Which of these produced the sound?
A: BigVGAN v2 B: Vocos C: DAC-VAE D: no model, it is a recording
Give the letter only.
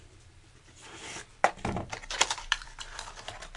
A